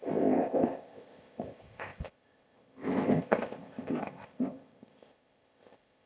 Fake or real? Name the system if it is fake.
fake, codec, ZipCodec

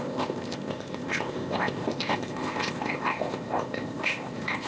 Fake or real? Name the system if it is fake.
fake, codec, ZipCodec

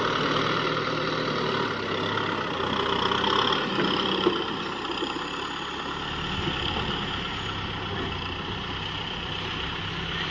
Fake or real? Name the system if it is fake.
real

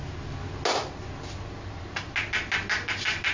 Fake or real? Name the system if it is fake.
real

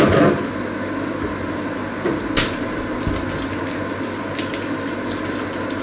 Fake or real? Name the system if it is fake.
real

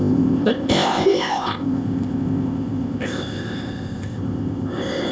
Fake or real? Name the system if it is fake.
fake, codec, ZipCodec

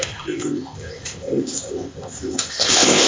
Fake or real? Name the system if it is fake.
fake, codec, ZipCodec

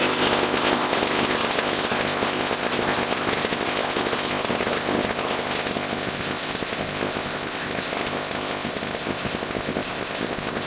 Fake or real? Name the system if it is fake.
fake, codec, ZipCodec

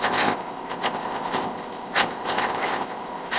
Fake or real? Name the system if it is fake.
fake, codec, ZipCodec